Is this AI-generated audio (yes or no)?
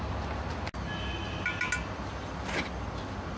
no